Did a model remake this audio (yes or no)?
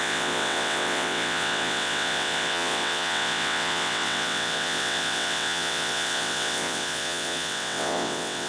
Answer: yes